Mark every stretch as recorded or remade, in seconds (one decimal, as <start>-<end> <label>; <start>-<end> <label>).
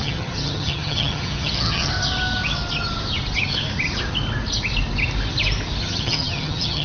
0.0-1.9 remade; 1.9-5.8 recorded; 5.8-6.8 remade